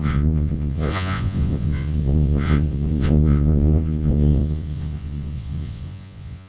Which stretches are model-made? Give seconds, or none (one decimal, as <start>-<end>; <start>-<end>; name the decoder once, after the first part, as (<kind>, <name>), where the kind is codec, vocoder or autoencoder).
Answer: 0.0-6.5 (vocoder, Vocos)